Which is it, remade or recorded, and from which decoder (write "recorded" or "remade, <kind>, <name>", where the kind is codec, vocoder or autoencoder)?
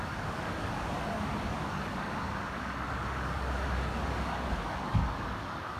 remade, codec, DAC